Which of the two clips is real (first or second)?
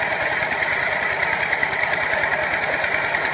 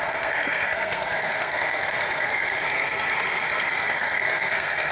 first